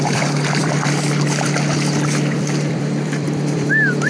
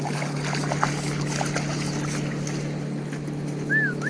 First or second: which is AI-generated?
first